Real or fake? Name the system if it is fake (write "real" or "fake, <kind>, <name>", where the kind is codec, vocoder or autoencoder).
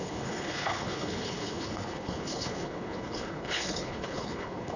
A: fake, codec, HILCodec